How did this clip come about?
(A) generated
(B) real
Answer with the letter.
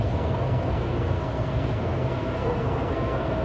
A